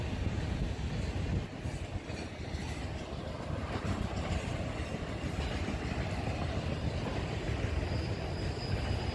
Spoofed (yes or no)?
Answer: no